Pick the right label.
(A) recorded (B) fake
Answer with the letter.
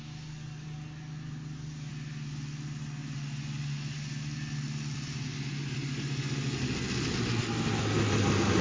A